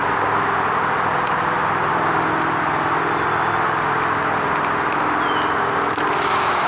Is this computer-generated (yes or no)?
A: no